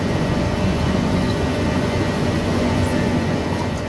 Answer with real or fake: fake